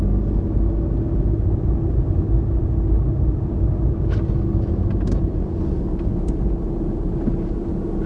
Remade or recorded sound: recorded